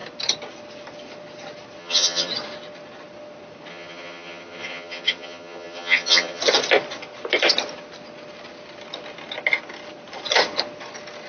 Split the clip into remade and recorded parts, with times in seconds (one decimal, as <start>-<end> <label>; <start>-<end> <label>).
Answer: 0.0-1.8 recorded; 1.8-2.3 remade; 2.3-3.7 recorded; 3.7-6.4 remade; 6.4-11.3 recorded